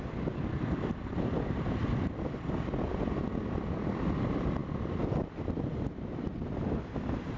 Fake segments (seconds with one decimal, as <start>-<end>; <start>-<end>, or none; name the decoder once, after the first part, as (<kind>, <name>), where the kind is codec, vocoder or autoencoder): none